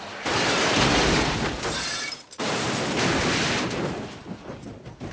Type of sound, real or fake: real